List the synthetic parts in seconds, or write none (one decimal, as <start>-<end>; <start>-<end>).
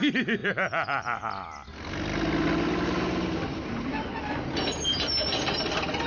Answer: 0.4-1.2